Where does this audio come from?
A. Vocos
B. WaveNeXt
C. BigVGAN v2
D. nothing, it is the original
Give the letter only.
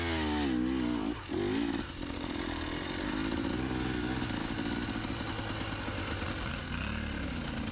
D